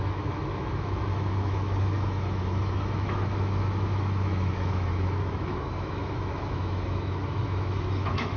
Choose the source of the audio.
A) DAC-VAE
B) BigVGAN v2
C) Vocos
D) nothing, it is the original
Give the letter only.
A